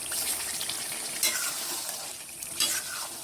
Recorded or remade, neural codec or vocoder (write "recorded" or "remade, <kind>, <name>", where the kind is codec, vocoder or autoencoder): recorded